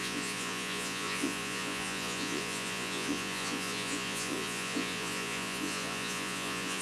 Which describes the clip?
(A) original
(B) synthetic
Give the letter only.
B